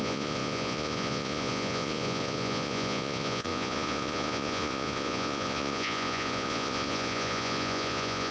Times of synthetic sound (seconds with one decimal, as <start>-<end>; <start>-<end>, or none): 0.0-8.3